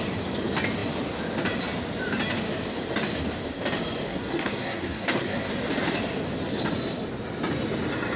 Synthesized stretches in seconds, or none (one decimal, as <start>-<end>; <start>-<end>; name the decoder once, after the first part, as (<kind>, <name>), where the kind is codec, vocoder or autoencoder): 4.1-5.5 (codec, SNAC)